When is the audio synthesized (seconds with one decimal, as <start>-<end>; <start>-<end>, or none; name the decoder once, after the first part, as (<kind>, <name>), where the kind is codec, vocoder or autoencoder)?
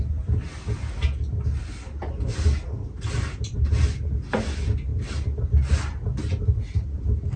none